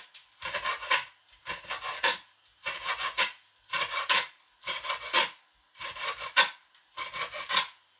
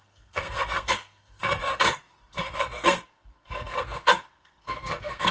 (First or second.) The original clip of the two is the first